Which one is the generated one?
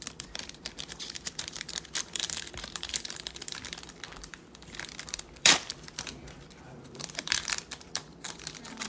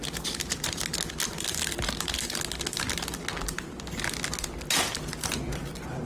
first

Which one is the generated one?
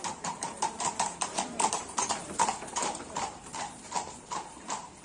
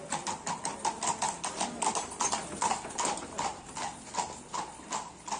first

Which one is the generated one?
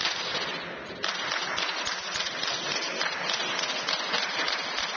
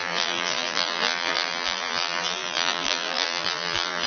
second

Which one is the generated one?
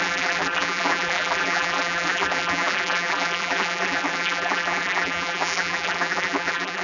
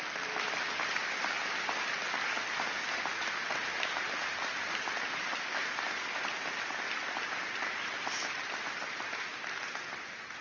first